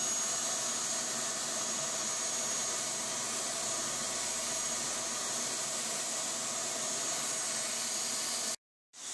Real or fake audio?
real